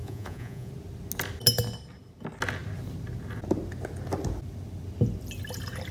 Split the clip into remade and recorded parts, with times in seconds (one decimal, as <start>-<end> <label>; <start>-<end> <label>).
0.0-0.7 remade; 0.7-5.9 recorded